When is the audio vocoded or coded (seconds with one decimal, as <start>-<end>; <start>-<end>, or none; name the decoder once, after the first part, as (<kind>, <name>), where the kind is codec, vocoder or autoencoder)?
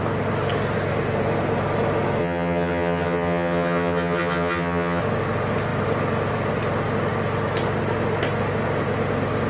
2.2-5.0 (vocoder, HiFi-GAN)